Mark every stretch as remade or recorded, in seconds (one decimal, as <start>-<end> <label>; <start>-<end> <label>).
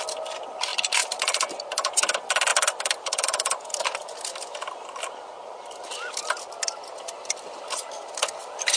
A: 0.0-8.8 recorded